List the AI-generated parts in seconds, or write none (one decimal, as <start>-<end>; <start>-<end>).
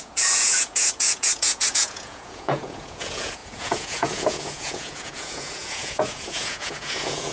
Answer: 0.0-7.3